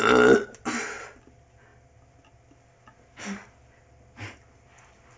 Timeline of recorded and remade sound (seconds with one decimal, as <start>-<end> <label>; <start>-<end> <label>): 0.0-5.2 recorded